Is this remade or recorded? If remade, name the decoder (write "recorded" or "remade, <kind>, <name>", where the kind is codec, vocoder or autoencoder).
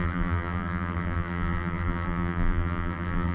remade, vocoder, BigVGAN v2